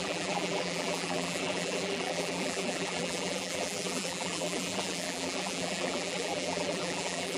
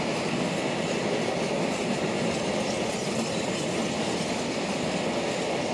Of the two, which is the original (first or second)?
second